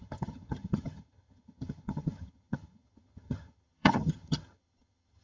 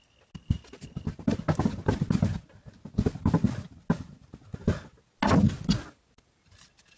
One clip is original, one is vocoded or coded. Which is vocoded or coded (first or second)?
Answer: first